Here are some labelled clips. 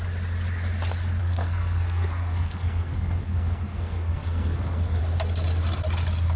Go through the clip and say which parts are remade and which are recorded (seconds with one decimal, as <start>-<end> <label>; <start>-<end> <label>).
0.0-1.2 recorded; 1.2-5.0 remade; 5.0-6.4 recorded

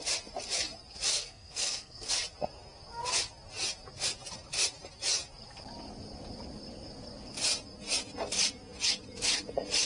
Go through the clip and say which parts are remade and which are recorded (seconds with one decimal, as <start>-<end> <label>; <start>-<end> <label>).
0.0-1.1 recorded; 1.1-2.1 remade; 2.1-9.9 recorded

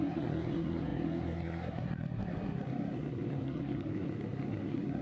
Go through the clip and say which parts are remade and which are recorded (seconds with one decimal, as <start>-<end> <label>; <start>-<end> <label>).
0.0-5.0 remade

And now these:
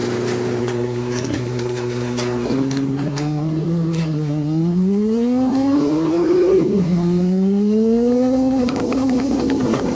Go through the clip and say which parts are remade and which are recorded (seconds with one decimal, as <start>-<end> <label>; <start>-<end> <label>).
0.0-0.6 recorded; 0.6-9.9 remade

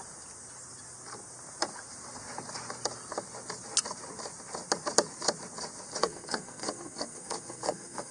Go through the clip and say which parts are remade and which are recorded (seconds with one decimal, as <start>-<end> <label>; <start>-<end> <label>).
0.0-6.0 recorded; 6.0-8.1 remade

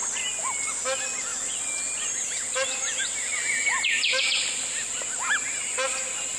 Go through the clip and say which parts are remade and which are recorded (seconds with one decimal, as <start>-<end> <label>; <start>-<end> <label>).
0.0-6.4 recorded